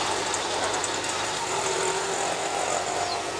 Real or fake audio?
real